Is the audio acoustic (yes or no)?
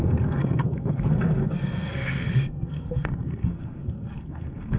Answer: no